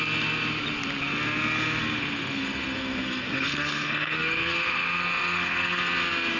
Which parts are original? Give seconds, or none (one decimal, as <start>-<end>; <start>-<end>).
0.0-2.0; 5.8-6.4